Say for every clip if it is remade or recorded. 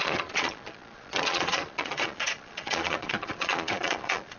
remade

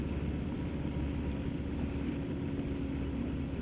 recorded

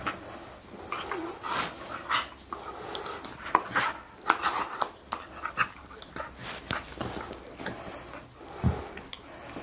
recorded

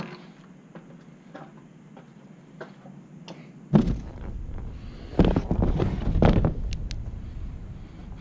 recorded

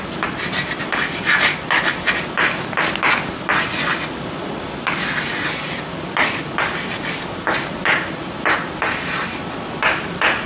recorded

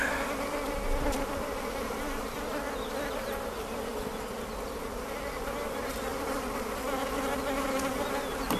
recorded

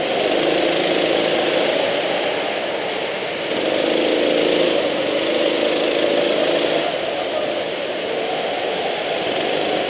recorded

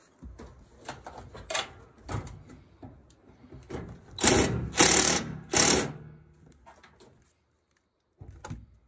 recorded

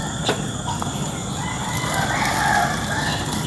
recorded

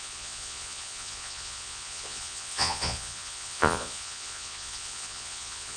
remade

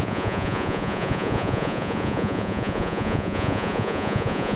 remade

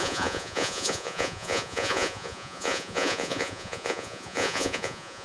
remade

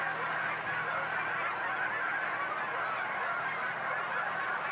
recorded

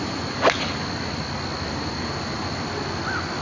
recorded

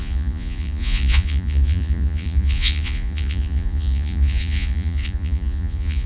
remade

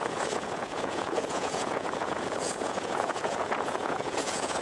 remade